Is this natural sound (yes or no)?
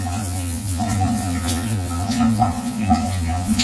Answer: no